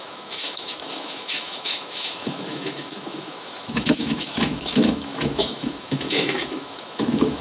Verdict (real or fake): fake